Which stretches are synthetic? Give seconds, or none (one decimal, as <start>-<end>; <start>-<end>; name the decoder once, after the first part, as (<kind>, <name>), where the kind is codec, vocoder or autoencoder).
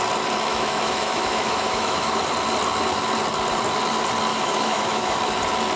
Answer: 0.5-2.2 (autoencoder, DAC-VAE); 4.3-5.2